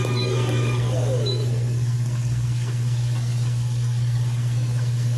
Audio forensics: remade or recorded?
remade